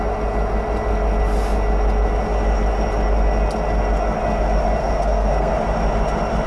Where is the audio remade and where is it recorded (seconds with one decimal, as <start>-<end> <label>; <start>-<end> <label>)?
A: 0.0-4.8 recorded; 4.8-5.5 remade; 5.5-6.5 recorded